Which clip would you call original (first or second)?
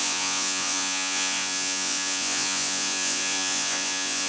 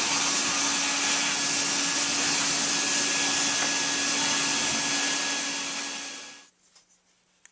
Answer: second